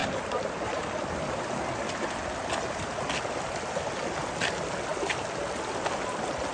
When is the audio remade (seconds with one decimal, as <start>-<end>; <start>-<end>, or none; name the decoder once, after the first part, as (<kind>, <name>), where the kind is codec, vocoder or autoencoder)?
none